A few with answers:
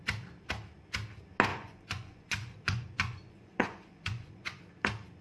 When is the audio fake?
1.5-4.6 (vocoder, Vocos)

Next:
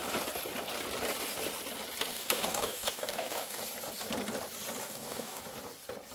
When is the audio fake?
2.1-3.6 (codec, DAC); 4.8-5.4

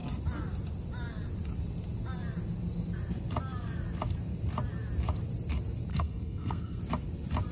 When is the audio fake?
5.9-6.8 (codec, SNAC)

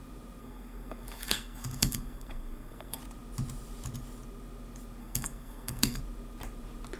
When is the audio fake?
0.4-3.0 (codec, SNAC); 5.0-6.0